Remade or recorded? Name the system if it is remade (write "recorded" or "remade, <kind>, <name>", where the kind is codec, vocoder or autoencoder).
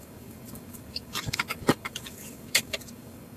remade, codec, DAC